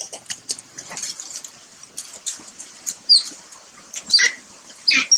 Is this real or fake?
real